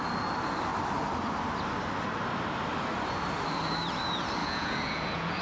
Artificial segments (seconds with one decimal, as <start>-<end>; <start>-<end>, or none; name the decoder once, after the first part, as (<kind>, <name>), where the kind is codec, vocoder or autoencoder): 4.4-5.4 (vocoder, Vocos)